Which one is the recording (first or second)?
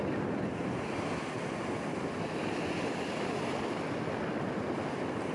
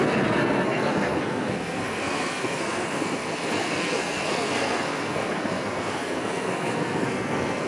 first